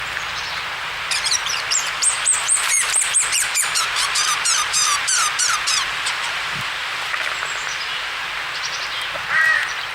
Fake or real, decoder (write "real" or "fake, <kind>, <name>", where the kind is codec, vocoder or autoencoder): fake, vocoder, BigVGAN v2